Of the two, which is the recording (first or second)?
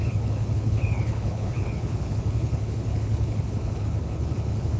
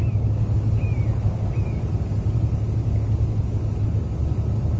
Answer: second